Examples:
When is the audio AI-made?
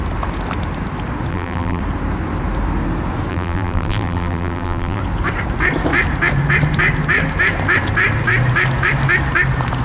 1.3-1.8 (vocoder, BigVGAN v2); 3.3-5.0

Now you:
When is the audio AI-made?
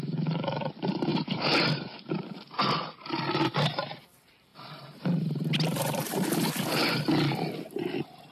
1.1-2.4 (vocoder, BigVGAN v2); 4.5-6.3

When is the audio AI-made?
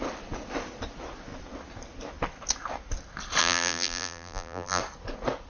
3.4-4.8 (vocoder, BigVGAN v2)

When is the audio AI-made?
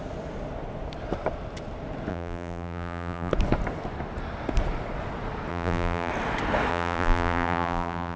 2.1-3.3 (vocoder, BigVGAN v2); 5.5-6.1; 6.7-8.2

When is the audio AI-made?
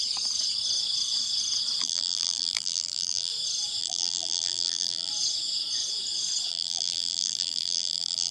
1.8-3.3 (vocoder, BigVGAN v2); 3.8-5.1; 6.5-8.3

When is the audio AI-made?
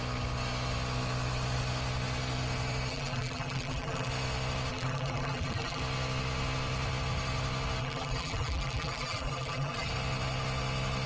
2.9-4.1 (vocoder, BigVGAN v2); 4.7-5.8; 7.8-9.9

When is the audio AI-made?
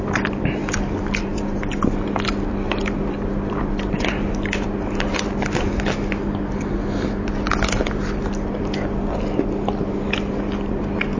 none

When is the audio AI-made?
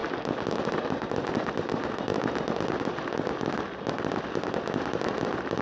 2.1-5.6 (vocoder, BigVGAN v2)